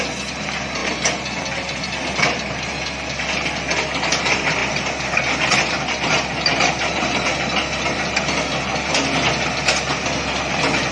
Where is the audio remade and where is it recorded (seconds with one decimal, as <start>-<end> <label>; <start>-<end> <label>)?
0.0-10.9 recorded